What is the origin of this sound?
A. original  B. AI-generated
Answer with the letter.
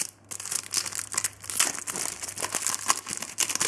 A